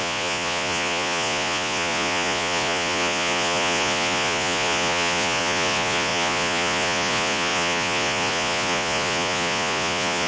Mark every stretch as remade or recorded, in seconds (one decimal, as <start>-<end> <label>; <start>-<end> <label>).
0.0-10.3 remade